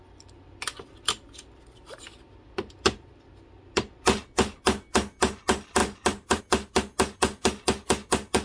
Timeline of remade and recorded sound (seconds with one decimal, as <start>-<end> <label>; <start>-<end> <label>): 0.0-5.8 recorded; 5.8-6.4 remade; 6.4-8.4 recorded